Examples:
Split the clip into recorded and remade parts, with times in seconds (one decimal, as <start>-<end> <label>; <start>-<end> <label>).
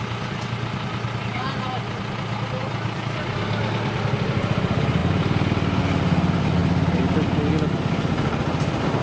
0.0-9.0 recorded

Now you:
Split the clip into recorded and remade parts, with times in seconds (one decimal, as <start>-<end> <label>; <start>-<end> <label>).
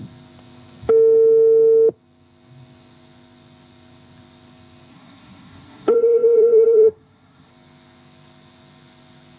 0.0-4.9 recorded; 4.9-7.5 remade; 7.5-9.4 recorded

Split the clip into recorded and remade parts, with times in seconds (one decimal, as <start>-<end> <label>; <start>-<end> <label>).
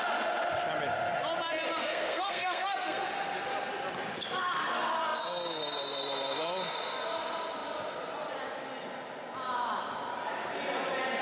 0.0-1.8 recorded; 1.8-3.1 remade; 3.1-11.2 recorded